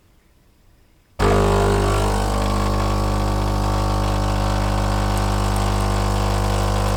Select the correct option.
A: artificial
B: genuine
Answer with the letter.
B